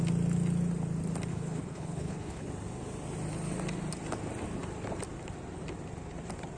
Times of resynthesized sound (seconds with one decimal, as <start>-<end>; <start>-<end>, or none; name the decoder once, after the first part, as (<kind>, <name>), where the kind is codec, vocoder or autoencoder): 1.3-2.5 (codec, HILCodec)